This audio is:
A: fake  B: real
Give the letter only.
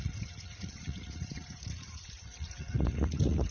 A